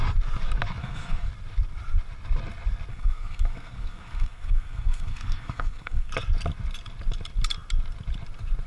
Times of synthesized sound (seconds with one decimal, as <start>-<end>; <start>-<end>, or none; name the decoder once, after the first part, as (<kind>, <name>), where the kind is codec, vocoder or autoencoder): 0.8-1.3 (codec, SNAC); 2.9-6.1